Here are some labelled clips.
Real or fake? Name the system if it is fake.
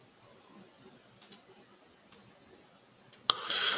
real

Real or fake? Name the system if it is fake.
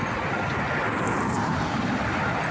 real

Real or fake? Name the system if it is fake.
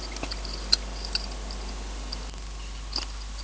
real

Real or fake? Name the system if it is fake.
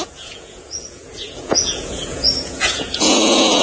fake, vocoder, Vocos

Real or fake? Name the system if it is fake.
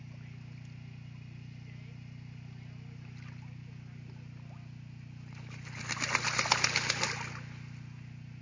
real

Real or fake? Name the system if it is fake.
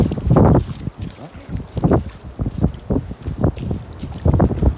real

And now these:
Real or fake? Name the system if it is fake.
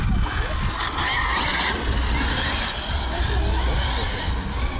real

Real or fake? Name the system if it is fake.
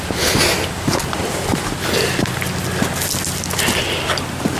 real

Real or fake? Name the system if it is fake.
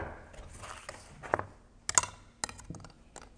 real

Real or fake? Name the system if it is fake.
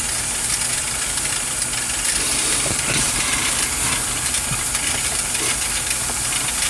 real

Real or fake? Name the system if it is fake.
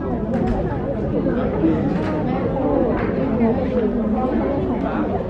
real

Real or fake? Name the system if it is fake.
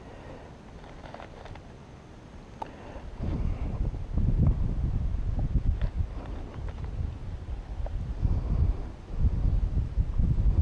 real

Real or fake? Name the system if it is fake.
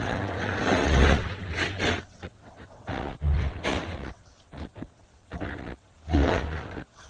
fake, vocoder, WaveNeXt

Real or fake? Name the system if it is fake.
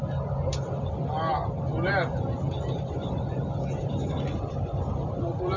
real